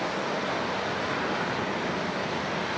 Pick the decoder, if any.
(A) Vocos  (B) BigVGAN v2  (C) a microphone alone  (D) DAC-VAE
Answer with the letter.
C